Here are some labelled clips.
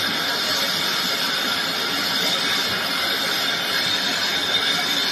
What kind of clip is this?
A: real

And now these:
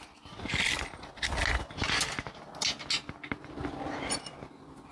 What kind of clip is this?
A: real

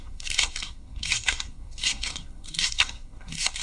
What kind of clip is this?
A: fake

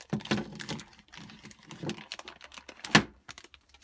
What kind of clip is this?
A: real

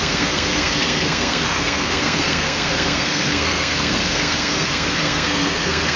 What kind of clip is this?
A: fake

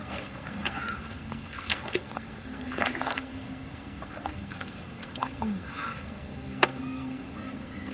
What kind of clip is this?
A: fake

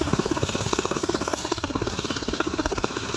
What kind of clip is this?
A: fake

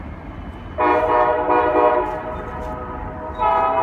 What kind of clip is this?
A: real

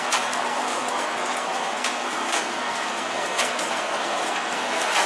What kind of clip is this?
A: fake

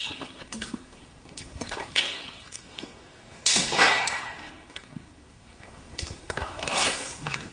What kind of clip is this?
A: fake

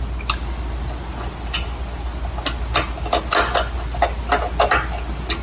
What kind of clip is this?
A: real